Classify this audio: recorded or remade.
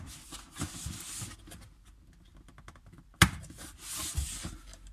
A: recorded